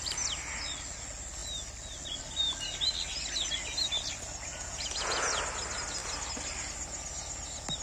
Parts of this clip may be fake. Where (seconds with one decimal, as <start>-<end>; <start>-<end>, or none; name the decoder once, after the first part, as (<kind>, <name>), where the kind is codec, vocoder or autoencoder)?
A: 4.5-5.4 (vocoder, Vocos)